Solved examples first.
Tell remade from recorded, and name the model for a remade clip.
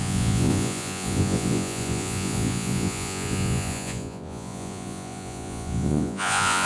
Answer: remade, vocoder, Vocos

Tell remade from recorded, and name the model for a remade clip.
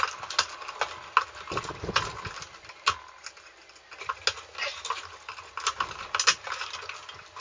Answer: recorded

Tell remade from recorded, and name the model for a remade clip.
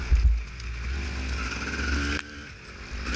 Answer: recorded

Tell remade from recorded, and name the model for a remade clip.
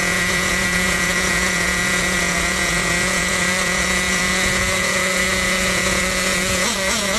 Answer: remade, vocoder, Vocos